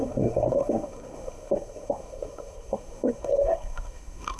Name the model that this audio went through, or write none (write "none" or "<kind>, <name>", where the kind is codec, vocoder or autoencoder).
codec, SNAC